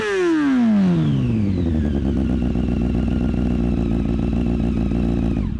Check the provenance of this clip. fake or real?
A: real